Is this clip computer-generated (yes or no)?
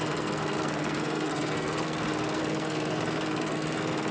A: yes